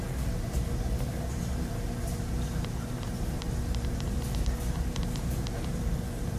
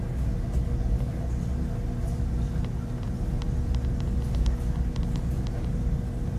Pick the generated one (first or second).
first